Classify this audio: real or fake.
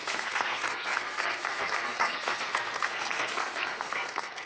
fake